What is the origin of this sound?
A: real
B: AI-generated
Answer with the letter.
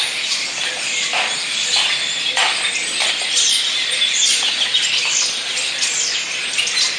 A